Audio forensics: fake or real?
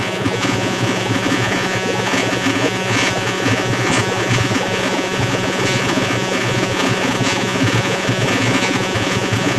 fake